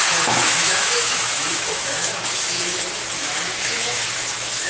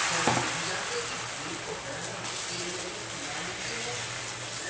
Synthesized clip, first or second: first